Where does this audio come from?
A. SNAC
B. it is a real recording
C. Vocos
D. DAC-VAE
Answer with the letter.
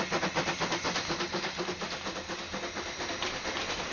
B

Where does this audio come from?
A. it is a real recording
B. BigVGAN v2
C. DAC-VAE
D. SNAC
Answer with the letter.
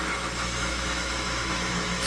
C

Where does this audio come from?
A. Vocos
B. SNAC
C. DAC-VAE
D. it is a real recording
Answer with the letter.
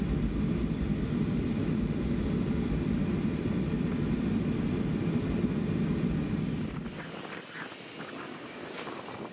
D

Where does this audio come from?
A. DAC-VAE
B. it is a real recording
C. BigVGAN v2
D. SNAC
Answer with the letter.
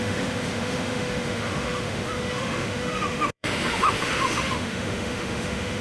A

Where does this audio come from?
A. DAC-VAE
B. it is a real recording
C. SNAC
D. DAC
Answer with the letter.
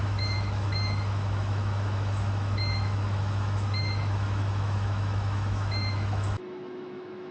A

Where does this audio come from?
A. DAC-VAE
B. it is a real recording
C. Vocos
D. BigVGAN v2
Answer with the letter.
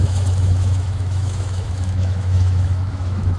A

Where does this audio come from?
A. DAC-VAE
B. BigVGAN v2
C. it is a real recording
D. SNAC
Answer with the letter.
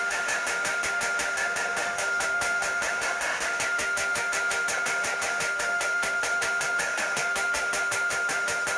A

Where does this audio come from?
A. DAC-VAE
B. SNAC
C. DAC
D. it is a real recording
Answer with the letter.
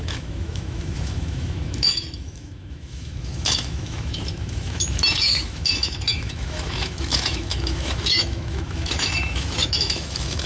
A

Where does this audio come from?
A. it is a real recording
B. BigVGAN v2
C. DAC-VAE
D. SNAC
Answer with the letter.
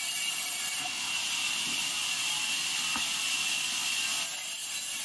A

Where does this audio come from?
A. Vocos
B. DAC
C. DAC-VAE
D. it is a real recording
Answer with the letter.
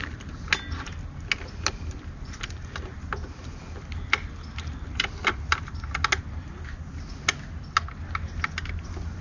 D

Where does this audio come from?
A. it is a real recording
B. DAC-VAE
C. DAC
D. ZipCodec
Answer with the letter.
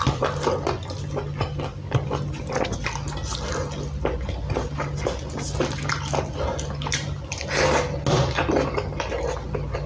A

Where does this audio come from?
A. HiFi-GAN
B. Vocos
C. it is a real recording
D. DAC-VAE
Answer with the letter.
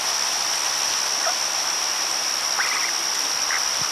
C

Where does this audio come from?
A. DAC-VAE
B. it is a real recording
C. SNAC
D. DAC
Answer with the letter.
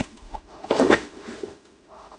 A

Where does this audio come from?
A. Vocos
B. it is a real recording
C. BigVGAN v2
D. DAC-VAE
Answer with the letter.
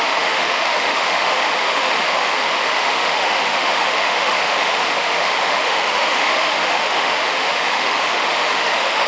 D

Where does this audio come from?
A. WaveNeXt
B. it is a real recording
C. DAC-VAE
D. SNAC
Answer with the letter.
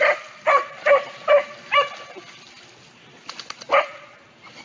B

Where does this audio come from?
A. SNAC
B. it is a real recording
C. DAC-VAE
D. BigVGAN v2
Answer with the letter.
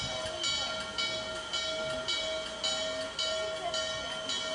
B